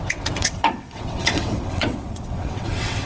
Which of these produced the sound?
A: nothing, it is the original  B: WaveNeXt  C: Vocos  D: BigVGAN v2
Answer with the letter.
B